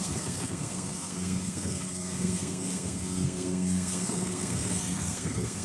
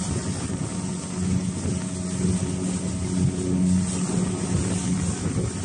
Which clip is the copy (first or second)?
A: first